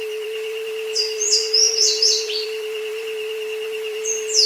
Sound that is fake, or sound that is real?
fake